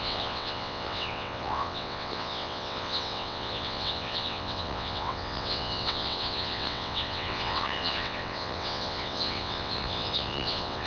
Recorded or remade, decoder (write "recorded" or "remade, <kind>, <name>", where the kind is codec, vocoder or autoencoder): remade, vocoder, WaveNeXt